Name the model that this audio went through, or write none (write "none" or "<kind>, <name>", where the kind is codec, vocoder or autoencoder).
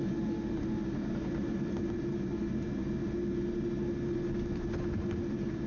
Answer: none